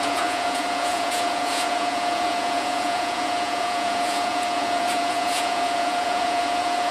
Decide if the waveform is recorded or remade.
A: remade